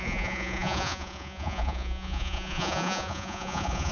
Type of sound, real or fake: fake